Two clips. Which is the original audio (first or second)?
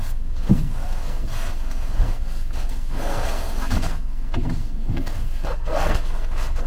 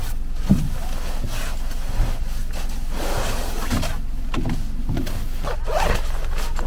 second